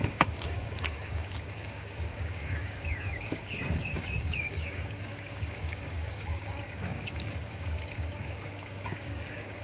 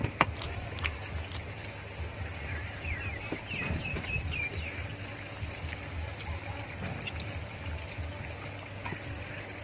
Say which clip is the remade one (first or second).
first